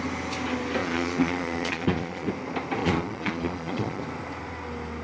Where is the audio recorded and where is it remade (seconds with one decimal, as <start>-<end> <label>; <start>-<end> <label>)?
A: 0.0-0.8 recorded; 0.8-2.3 remade; 2.3-2.8 recorded; 2.8-4.0 remade; 4.0-5.0 recorded